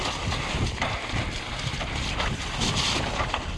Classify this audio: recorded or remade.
recorded